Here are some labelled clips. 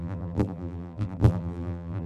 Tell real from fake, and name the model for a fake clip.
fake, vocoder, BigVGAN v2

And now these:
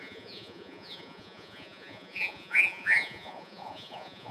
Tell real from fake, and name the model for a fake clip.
fake, vocoder, Vocos